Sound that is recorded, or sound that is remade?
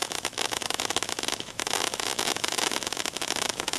remade